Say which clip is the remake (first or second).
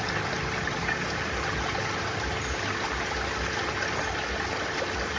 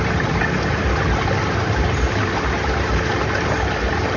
second